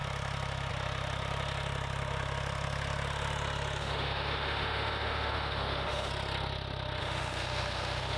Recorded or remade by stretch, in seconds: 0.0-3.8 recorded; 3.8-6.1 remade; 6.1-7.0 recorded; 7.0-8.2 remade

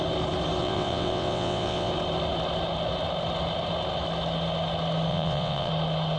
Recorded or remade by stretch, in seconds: 0.0-0.6 recorded; 0.6-1.9 remade; 1.9-5.1 recorded; 5.1-5.7 remade; 5.7-6.2 recorded

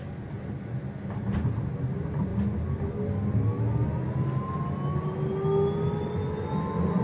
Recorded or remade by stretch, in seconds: 0.0-7.0 recorded

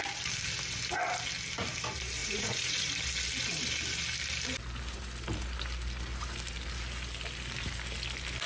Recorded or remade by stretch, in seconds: 0.0-2.2 recorded; 2.2-2.9 remade; 2.9-8.5 recorded

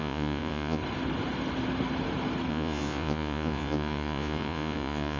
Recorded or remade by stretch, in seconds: 0.0-0.8 remade; 0.8-2.5 recorded; 2.5-5.2 remade